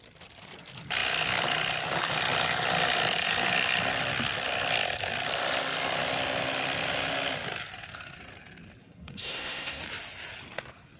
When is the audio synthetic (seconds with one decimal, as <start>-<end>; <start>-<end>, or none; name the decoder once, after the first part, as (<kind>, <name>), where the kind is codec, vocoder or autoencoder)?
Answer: 8.8-9.8 (codec, SNAC)